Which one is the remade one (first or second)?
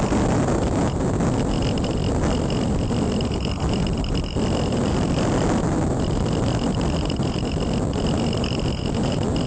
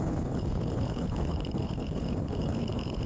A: second